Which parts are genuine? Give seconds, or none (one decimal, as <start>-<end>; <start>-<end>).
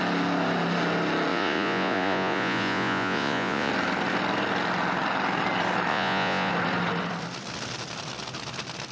0.0-1.3; 3.7-5.9; 6.5-8.9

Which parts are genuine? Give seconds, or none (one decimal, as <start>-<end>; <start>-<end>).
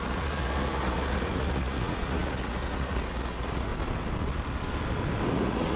3.7-5.3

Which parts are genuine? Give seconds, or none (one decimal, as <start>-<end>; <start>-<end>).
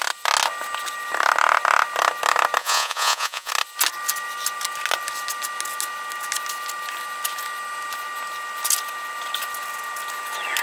0.0-2.6; 3.5-10.6